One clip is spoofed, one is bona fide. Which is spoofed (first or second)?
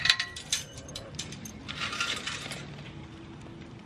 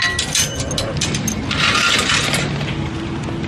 first